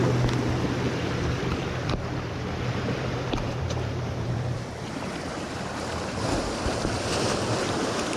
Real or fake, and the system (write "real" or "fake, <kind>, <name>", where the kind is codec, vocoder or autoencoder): fake, vocoder, BigVGAN v2